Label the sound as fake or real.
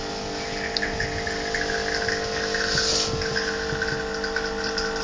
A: real